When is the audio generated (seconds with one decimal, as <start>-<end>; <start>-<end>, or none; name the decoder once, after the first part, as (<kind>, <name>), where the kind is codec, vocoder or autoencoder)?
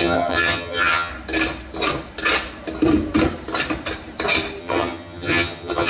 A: 0.0-1.1 (vocoder, HiFi-GAN); 4.6-5.9